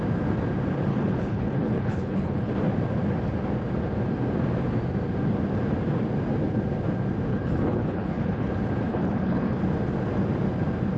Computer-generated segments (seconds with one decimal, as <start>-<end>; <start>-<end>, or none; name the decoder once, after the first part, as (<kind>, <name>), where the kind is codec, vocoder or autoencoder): 0.9-2.5 (codec, HILCodec); 7.3-8.5; 8.9-9.6